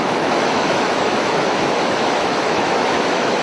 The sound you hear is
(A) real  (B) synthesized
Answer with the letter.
B